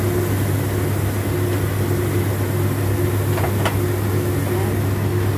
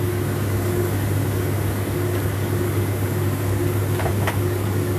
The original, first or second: first